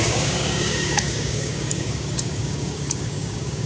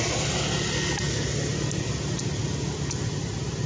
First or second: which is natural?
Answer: second